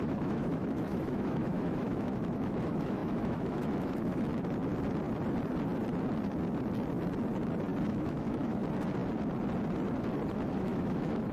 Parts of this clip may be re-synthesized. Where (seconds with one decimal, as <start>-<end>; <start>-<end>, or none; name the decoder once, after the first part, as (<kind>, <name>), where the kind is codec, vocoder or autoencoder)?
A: 0.0-4.3 (autoencoder, DAC-VAE); 7.9-8.6; 10.3-11.3